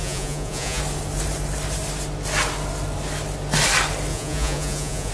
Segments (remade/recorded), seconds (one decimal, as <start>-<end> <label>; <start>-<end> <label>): 0.0-0.8 remade; 0.8-4.1 recorded; 4.1-5.1 remade